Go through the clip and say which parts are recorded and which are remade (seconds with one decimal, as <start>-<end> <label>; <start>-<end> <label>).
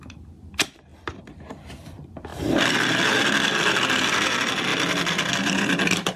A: 0.0-0.9 remade; 0.9-1.8 recorded; 1.8-4.7 remade; 4.7-5.3 recorded; 5.3-6.2 remade